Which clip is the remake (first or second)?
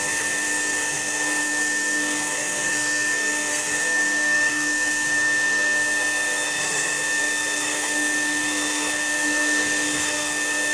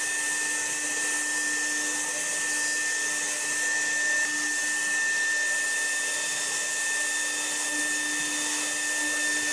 first